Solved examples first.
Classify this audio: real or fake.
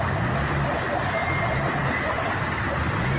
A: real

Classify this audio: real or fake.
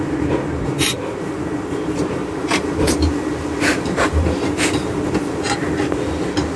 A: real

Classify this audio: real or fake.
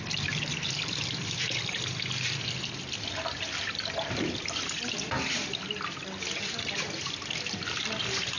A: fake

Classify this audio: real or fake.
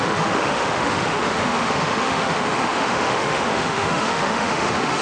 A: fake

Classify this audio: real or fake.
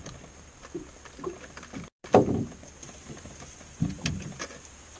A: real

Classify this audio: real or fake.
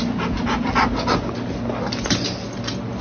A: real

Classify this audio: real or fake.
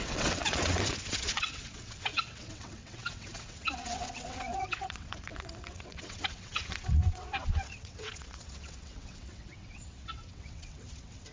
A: fake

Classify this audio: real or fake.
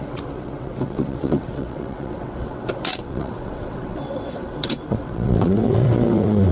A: fake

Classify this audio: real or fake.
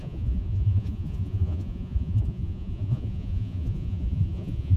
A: fake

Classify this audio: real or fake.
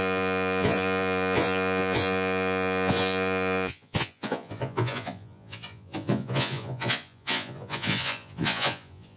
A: fake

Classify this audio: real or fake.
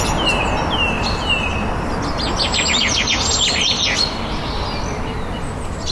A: real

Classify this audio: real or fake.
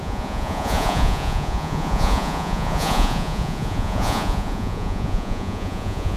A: fake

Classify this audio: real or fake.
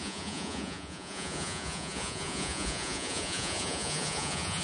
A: fake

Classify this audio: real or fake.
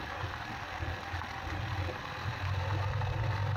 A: real